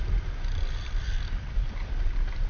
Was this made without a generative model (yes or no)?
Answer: no